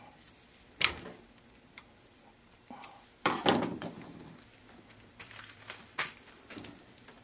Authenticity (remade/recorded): remade